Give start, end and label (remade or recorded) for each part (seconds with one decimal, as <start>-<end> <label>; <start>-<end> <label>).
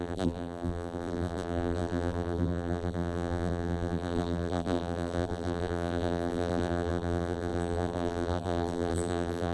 0.0-9.5 remade